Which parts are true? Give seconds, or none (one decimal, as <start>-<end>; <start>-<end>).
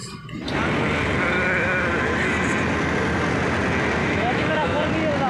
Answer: 0.0-4.0; 4.8-5.3